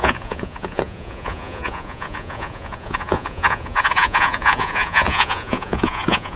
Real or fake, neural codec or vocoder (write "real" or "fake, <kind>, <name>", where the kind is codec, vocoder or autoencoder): fake, vocoder, Vocos